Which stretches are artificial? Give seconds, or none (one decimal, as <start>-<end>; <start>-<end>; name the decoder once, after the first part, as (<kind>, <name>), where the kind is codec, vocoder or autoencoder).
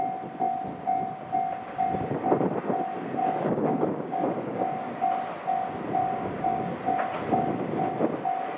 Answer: 3.2-4.9 (codec, DAC); 6.0-6.8